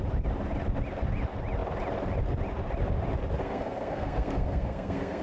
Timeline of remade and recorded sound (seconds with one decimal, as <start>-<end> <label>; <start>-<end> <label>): 0.0-3.4 recorded; 3.4-5.2 remade